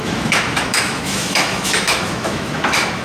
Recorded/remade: remade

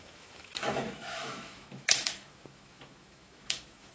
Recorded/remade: remade